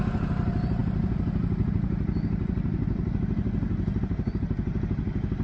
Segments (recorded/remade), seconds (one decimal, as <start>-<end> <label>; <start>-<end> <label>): 0.0-5.4 recorded